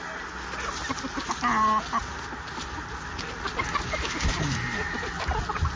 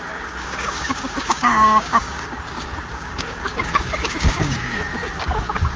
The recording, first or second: first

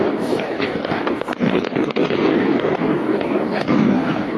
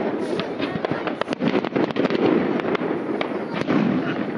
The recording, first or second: second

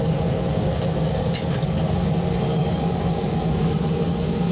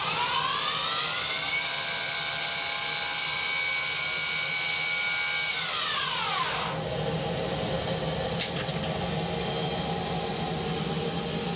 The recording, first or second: second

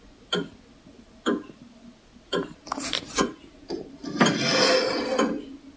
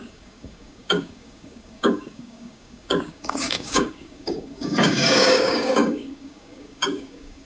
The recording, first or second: first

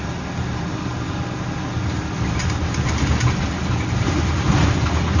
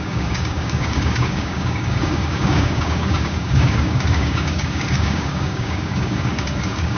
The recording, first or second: first